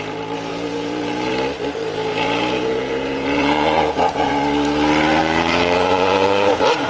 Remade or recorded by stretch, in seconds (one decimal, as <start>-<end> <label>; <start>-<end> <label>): 0.0-0.5 recorded; 0.5-1.3 remade; 1.3-2.1 recorded; 2.1-4.3 remade; 4.3-5.2 recorded; 5.2-6.5 remade; 6.5-6.9 recorded